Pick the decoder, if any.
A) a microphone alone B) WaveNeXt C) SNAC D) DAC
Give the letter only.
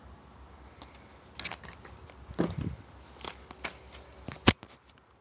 A